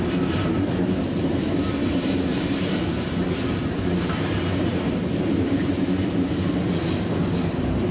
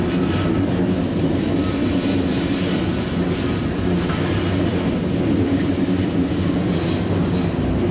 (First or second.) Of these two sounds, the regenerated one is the first